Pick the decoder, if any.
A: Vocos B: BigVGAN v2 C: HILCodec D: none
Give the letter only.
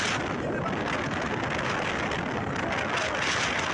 D